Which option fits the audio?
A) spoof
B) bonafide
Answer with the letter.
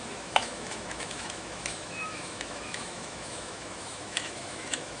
A